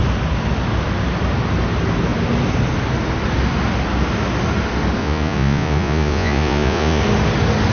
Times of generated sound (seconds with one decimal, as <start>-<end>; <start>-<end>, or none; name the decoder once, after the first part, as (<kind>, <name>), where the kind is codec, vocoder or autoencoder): 5.0-7.0 (vocoder, Vocos)